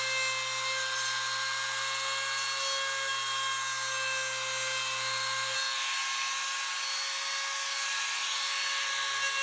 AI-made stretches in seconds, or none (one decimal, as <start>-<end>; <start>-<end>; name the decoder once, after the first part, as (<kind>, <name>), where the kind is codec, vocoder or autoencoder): none